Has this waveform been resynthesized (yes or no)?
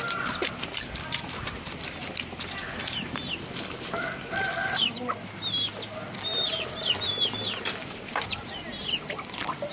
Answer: yes